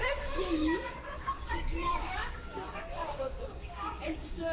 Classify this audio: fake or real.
fake